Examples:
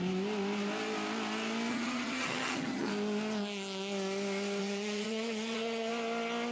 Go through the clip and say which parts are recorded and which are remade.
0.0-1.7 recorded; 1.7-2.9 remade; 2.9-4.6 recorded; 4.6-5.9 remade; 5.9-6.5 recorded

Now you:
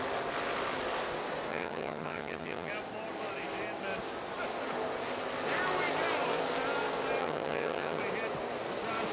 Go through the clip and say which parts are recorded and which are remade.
0.0-1.5 recorded; 1.5-2.7 remade; 2.7-7.2 recorded; 7.2-8.0 remade; 8.0-9.1 recorded

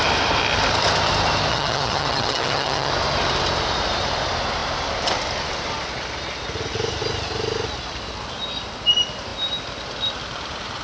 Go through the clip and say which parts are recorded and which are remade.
0.0-1.5 recorded; 1.5-2.9 remade; 2.9-10.8 recorded

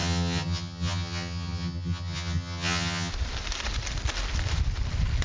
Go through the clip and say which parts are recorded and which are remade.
0.0-3.1 remade; 3.1-5.2 recorded

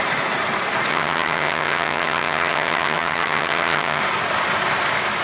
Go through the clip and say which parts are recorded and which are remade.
0.0-0.9 recorded; 0.9-4.0 remade; 4.0-5.2 recorded

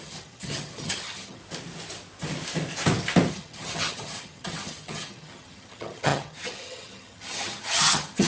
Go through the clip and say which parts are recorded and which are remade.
0.0-1.4 remade; 1.4-3.3 recorded; 3.3-8.3 remade